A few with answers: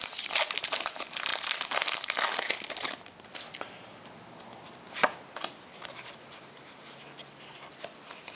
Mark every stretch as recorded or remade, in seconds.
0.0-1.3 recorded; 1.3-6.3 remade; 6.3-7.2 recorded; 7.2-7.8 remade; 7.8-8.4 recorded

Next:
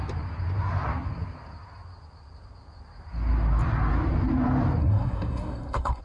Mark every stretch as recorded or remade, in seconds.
0.0-4.8 recorded; 4.8-6.0 remade

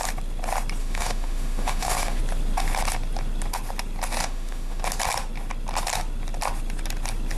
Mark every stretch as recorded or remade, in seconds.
0.0-0.8 recorded; 0.8-2.2 remade; 2.2-4.2 recorded; 4.2-4.8 remade; 4.8-7.4 recorded

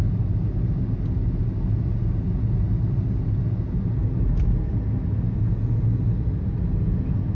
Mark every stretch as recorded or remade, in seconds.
0.0-7.3 recorded

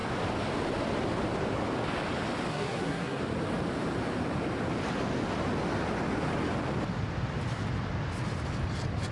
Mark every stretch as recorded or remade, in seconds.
0.0-2.5 recorded; 2.5-3.2 remade; 3.2-9.1 recorded

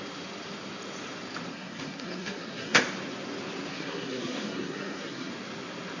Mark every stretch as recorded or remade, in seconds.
0.0-1.5 recorded; 1.5-2.8 remade; 2.8-3.7 recorded; 3.7-5.3 remade; 5.3-6.0 recorded

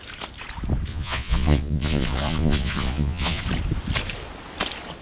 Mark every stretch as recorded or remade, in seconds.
0.0-0.9 recorded; 0.9-3.4 remade; 3.4-5.0 recorded